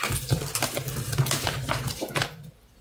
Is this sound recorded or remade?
recorded